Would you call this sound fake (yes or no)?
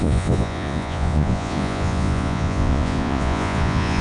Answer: yes